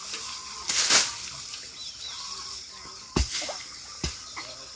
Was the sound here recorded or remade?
recorded